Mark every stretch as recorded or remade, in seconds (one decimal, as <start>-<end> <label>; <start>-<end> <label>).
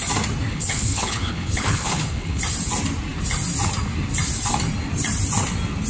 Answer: 0.0-0.5 recorded; 0.5-2.4 remade; 2.4-5.9 recorded